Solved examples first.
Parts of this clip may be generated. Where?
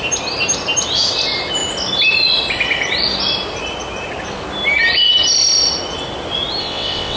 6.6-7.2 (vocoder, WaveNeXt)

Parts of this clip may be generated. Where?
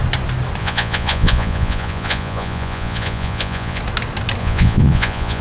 0.6-3.8 (vocoder, Vocos); 4.4-5.4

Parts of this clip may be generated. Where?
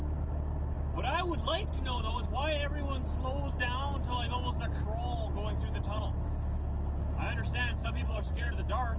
7.8-8.5 (vocoder, Vocos)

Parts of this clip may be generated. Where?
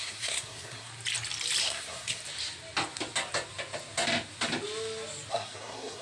0.0-0.9 (codec, SNAC); 1.6-2.2; 5.3-6.0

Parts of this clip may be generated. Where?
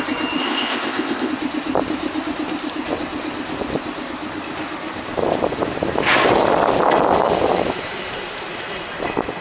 0.4-1.3 (codec, ZipCodec)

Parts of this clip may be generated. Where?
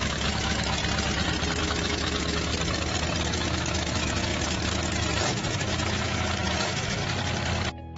0.0-0.8 (autoencoder, DAC-VAE); 1.6-2.5; 3.2-7.0